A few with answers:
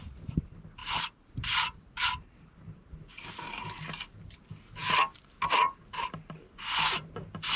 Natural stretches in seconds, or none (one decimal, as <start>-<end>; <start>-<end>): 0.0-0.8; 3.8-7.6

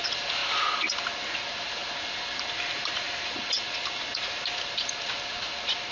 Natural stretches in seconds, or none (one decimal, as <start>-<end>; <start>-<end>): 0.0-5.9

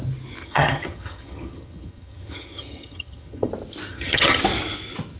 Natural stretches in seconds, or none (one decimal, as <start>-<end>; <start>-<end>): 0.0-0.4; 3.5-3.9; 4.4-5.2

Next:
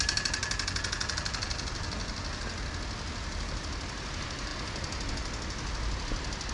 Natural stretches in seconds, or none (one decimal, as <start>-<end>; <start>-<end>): 0.4-3.6; 4.5-6.5

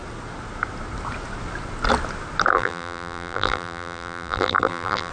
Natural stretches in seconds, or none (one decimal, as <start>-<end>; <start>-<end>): 0.0-2.5

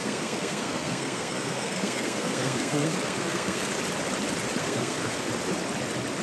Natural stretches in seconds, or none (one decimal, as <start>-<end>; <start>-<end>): 3.7-4.6; 5.3-6.2

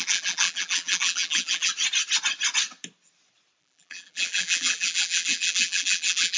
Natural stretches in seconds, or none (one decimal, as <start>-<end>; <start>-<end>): 1.7-3.6

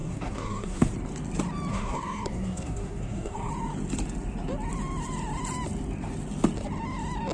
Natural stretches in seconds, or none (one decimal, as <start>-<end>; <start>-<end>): 0.9-1.7; 3.5-7.3